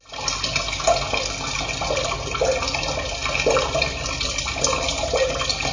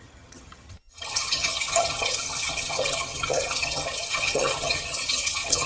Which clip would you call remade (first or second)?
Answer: second